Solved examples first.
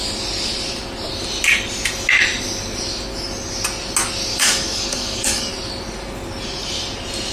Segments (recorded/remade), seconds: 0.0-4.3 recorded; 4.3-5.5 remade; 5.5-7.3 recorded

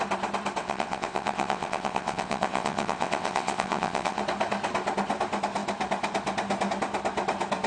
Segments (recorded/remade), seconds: 0.0-0.6 recorded; 0.6-4.2 remade; 4.2-7.7 recorded

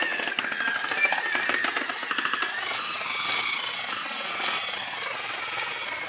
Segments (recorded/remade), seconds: 0.0-6.1 recorded

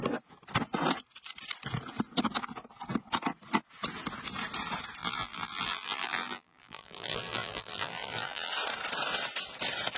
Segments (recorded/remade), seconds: 0.0-5.0 recorded; 5.0-8.5 remade; 8.5-10.0 recorded